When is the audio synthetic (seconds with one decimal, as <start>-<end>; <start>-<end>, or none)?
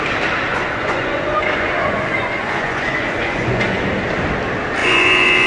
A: 0.5-3.8; 4.8-5.5